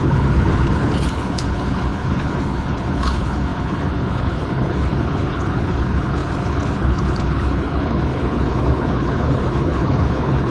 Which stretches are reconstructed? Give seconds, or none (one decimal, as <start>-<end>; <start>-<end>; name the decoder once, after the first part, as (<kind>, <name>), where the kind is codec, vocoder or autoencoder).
0.0-10.5 (codec, HILCodec)